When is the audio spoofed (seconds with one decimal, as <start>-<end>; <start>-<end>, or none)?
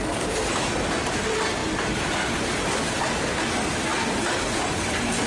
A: none